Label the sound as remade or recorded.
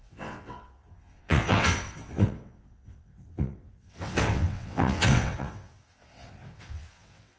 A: remade